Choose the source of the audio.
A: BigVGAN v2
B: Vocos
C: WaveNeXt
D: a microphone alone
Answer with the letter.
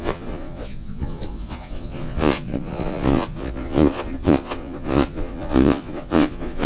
B